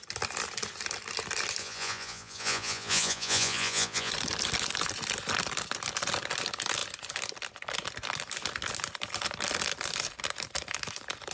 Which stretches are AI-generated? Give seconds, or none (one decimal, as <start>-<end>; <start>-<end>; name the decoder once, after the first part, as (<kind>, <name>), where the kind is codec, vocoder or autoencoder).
1.6-4.1 (vocoder, Vocos)